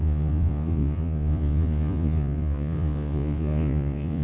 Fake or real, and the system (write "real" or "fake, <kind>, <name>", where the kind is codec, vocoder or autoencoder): fake, vocoder, Vocos